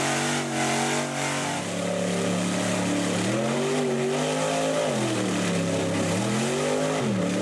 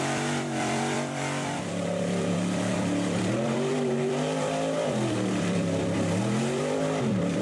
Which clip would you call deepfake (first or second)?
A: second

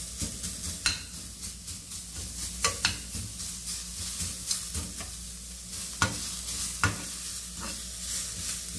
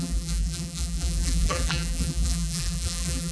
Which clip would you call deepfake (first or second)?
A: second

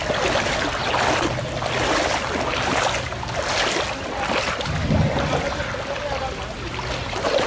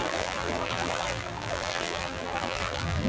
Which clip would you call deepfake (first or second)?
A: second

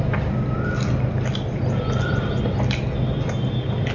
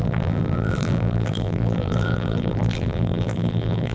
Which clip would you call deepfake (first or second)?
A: second